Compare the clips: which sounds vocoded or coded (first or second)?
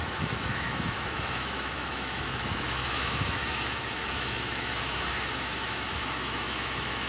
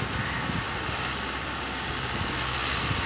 first